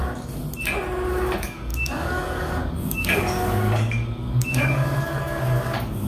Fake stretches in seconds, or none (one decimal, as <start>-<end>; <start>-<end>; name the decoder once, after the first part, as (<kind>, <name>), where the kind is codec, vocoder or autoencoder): 1.1-6.1 (codec, DAC)